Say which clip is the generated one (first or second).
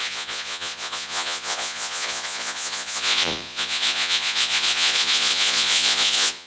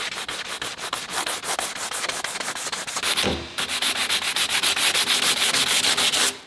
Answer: first